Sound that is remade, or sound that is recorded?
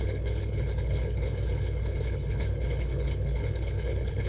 remade